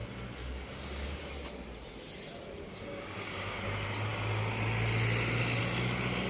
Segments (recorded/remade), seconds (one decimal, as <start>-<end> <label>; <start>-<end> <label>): 0.0-0.4 recorded; 0.4-1.2 remade; 1.2-2.7 recorded; 2.7-3.6 remade; 3.6-6.3 recorded